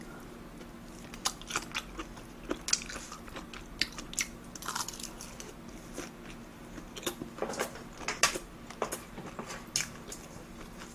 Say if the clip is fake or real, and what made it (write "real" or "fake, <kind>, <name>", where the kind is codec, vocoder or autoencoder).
real